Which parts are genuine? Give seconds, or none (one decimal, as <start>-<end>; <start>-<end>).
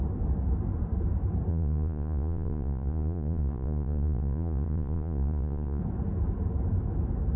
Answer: 0.0-1.5; 5.8-7.4